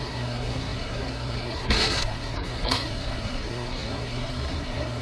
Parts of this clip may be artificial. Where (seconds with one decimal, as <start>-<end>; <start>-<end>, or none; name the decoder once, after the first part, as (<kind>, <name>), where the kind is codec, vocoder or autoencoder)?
0.0-5.0 (codec, SNAC)